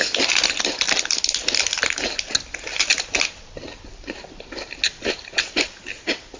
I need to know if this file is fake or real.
real